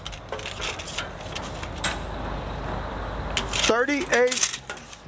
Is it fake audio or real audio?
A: real